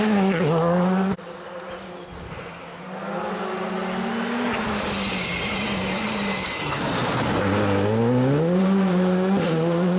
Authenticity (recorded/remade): recorded